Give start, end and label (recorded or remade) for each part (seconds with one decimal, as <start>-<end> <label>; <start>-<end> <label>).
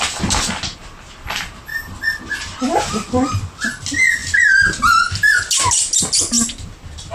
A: 0.0-7.1 recorded